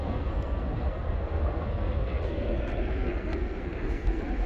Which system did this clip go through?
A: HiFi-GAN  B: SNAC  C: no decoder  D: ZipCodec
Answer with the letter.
B